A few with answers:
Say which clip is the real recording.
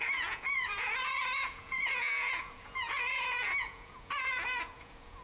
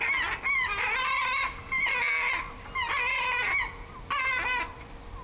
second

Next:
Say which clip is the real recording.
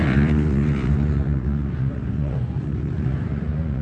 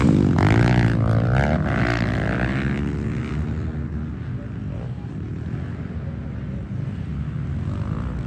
second